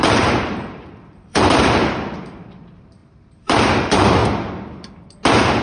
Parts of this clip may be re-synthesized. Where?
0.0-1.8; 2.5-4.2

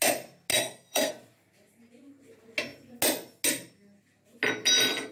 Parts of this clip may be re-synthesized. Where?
0.5-1.1

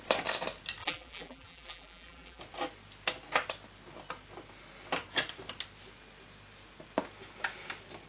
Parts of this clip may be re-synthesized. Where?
0.8-2.4